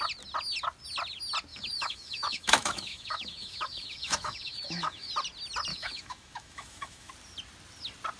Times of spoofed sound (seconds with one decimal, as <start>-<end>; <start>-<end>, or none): 1.5-5.1; 5.7-7.1